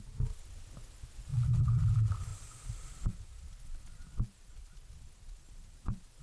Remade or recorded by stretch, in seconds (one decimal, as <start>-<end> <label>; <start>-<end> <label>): 0.0-6.2 recorded